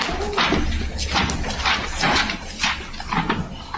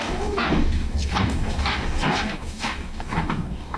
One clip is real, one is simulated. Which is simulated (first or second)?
second